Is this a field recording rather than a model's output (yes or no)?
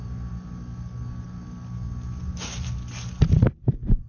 yes